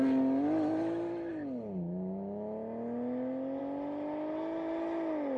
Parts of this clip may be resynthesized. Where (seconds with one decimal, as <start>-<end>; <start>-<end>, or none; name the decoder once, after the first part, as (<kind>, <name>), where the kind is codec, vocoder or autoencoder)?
none